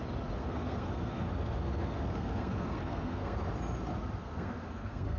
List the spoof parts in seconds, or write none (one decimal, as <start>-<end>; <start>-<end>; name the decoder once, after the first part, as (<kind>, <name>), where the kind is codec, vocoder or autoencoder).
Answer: 0.4-3.5 (codec, SNAC); 4.2-5.2